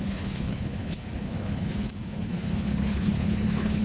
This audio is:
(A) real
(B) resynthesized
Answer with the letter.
B